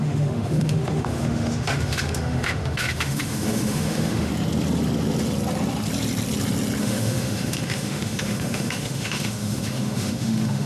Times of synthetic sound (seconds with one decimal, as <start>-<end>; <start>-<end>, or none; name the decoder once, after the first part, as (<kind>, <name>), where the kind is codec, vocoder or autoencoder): 0.0-4.3 (autoencoder, DAC-VAE); 6.8-10.7